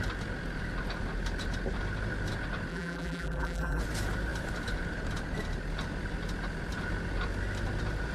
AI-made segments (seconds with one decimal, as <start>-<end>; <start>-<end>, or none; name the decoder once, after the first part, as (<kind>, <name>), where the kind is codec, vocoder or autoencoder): 2.7-3.8 (vocoder, BigVGAN v2)